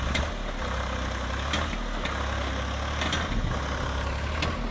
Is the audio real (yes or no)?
yes